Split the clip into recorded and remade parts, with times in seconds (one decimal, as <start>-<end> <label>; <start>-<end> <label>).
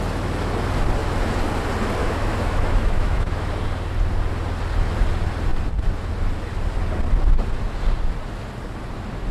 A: 0.0-2.0 recorded; 2.0-3.5 remade; 3.5-9.3 recorded